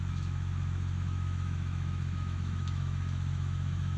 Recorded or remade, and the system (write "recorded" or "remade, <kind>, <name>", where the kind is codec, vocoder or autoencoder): remade, autoencoder, DAC-VAE